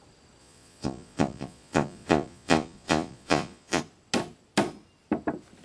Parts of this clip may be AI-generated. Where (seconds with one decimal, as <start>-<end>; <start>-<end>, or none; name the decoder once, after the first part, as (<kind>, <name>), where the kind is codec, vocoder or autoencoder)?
0.4-3.8 (vocoder, Vocos)